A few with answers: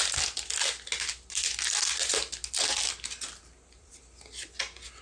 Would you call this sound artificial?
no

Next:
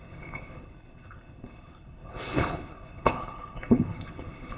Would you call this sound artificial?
yes